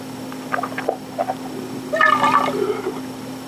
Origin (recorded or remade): recorded